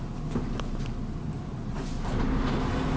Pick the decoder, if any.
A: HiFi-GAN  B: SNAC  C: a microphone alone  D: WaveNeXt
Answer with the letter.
C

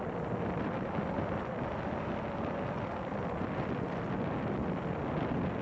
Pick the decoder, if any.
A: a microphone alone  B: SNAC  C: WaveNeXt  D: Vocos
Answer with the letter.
A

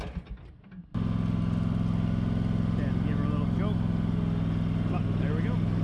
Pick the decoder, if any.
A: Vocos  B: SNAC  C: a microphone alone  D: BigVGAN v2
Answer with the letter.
C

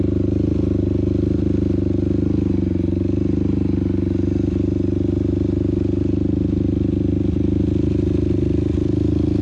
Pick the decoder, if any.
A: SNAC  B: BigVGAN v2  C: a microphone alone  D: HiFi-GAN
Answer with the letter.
C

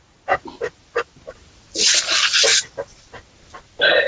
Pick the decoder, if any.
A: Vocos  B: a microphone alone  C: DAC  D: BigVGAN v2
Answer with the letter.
B